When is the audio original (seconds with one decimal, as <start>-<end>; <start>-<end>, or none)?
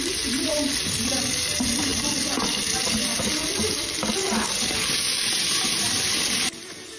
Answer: 0.0-7.0